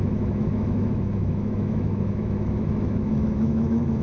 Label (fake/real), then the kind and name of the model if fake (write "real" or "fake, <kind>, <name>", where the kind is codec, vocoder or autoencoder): fake, autoencoder, DAC-VAE